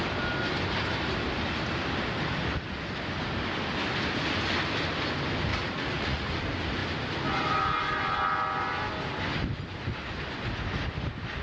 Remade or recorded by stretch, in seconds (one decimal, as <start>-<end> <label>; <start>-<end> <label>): 0.0-5.5 recorded; 5.5-6.3 remade; 6.3-11.4 recorded